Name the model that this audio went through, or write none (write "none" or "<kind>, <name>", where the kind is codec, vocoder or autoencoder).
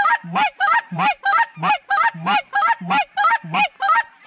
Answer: vocoder, BigVGAN v2